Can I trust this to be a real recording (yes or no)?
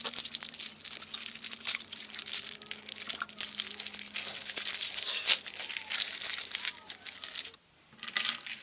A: yes